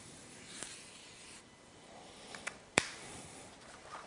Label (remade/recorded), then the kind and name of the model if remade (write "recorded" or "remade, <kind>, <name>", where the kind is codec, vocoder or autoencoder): remade, vocoder, BigVGAN v2